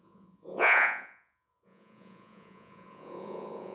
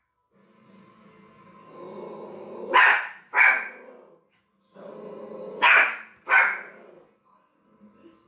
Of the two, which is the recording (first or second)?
second